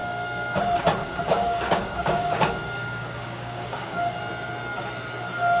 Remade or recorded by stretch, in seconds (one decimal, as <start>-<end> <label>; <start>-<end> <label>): 0.0-0.6 remade; 0.6-1.0 recorded; 1.0-4.2 remade; 4.2-5.6 recorded